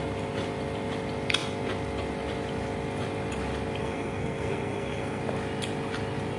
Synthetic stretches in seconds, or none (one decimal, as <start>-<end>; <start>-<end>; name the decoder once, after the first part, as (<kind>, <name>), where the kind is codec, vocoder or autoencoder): 3.8-5.2 (codec, SNAC)